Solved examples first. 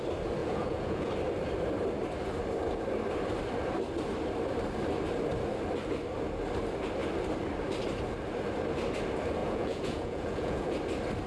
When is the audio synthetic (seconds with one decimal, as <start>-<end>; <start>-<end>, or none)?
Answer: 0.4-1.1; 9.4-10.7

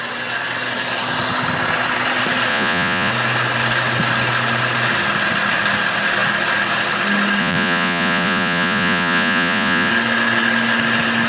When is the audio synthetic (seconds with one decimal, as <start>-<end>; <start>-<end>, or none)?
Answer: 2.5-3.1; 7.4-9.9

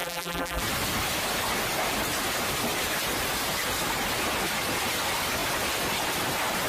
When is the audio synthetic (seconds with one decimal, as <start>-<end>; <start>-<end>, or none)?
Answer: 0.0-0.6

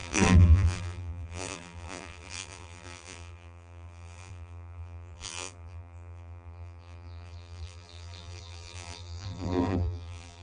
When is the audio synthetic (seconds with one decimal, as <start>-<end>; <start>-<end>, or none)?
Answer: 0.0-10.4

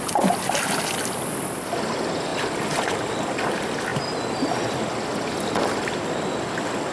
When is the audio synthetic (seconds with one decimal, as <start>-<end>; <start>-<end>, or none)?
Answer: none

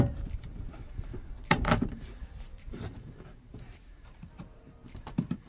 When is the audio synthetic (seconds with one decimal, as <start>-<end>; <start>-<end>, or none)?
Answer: 0.0-5.5

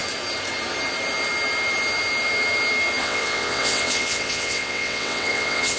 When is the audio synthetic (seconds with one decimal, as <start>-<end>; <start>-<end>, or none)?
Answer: 3.0-5.8